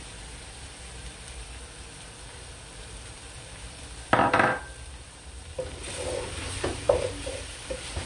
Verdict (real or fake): fake